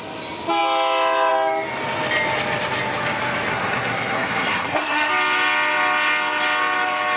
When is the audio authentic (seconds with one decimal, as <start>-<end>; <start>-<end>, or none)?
0.0-3.5; 5.1-7.2